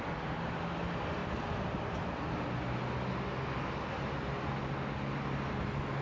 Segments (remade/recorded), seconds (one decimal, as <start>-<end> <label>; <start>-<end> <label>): 0.0-6.0 recorded